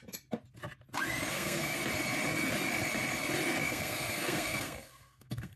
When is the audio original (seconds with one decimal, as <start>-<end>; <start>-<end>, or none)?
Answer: 0.0-1.3; 1.8-3.7